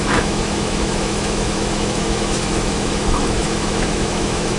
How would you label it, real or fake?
fake